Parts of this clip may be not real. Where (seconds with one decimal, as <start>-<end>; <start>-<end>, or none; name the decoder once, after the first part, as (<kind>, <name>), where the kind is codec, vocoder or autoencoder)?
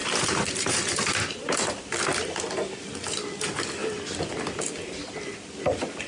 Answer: 0.0-1.9 (vocoder, BigVGAN v2)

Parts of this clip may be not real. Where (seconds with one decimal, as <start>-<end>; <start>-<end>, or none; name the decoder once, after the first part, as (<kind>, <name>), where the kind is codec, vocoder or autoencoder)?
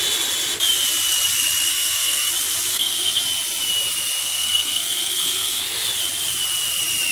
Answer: 1.7-2.3 (codec, SNAC); 2.7-3.2; 4.2-5.6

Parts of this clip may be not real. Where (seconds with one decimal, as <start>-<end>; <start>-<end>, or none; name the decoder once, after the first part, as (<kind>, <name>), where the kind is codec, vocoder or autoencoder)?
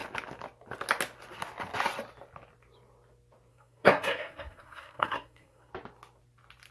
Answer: 3.5-5.7 (codec, SNAC)